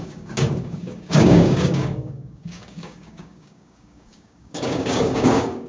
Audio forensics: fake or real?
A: fake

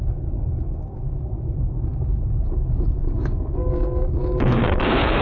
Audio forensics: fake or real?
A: fake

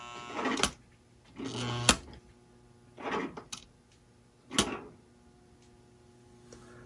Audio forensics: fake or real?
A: real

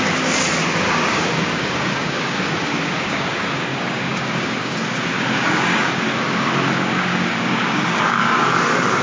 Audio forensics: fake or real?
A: fake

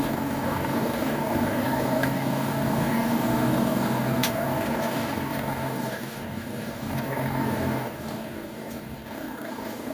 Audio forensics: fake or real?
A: fake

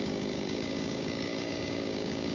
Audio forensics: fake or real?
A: fake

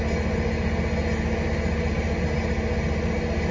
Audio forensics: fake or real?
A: real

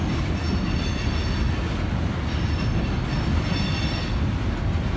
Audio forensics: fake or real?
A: real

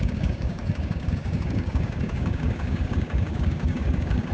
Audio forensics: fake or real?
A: fake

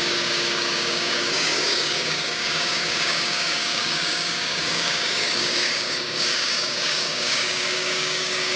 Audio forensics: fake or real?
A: fake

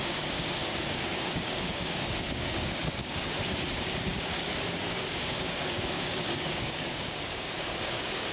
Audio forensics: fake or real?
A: fake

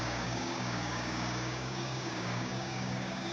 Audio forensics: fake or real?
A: fake